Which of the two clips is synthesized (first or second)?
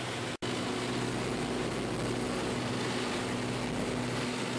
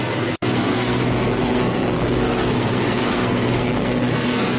second